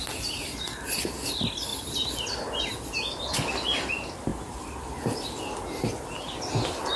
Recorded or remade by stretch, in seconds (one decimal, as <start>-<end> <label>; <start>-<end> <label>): 0.0-7.0 recorded